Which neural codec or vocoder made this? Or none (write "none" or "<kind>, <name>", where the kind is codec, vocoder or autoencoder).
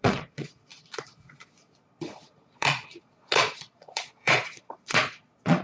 vocoder, Vocos